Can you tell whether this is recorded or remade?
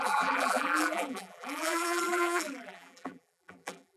remade